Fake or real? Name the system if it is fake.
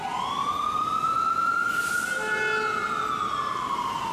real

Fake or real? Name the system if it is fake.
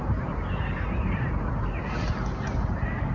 real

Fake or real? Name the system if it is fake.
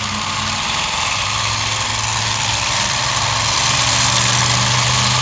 real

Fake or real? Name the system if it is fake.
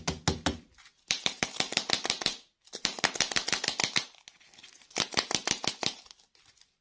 real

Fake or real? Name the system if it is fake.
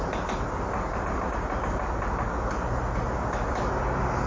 real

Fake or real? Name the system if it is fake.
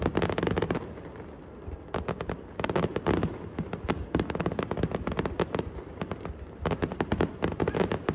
real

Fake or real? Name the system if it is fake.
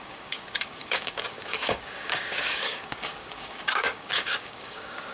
fake, codec, DAC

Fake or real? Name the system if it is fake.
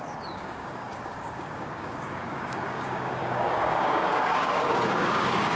fake, codec, DAC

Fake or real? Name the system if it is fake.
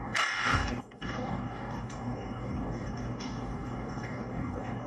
fake, codec, DAC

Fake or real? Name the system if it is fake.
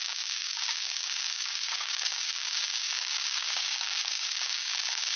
fake, codec, DAC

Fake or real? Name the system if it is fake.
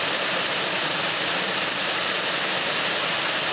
real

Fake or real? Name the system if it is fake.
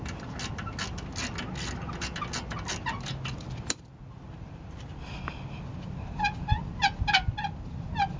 real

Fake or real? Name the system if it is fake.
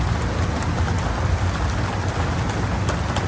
real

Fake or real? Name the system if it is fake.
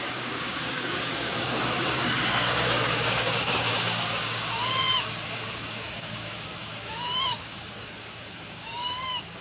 fake, codec, DAC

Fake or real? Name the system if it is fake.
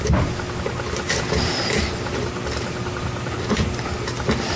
real